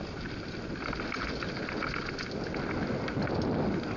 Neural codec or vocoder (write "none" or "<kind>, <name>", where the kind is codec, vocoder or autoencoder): none